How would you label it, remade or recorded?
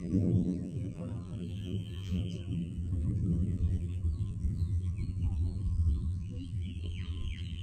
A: remade